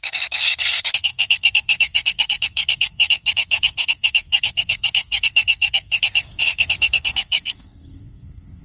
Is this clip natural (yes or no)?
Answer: no